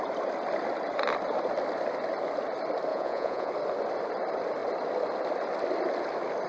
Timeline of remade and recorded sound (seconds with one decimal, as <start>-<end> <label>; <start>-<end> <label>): 0.0-2.9 recorded; 2.9-3.5 remade; 3.5-6.5 recorded